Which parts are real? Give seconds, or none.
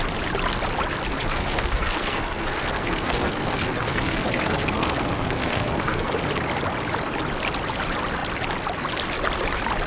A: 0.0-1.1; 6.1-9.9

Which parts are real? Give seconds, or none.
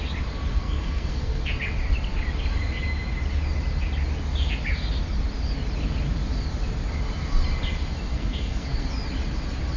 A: 0.0-0.5; 1.4-8.1; 8.9-9.8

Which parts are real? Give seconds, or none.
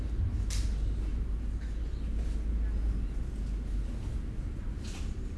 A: 0.0-5.4